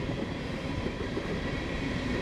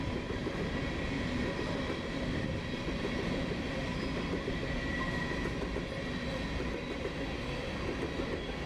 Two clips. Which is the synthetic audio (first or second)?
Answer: first